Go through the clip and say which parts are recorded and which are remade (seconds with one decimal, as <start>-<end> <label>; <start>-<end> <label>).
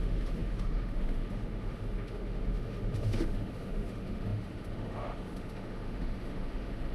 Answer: 0.0-6.9 remade